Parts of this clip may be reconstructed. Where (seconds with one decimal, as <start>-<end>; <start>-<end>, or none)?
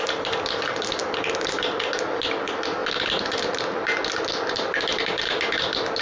none